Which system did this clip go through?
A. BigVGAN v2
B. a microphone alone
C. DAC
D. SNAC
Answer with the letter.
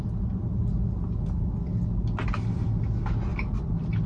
B